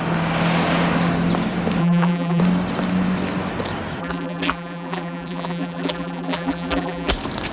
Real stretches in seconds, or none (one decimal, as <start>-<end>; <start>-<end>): 0.0-1.8; 2.4-4.0; 7.1-7.5

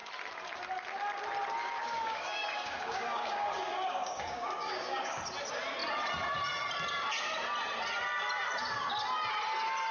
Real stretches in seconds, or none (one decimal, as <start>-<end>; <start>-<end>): 0.0-1.6; 5.1-9.9

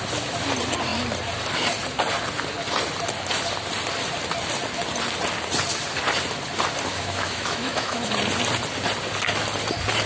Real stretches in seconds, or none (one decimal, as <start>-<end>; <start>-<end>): 0.0-6.9; 8.1-10.1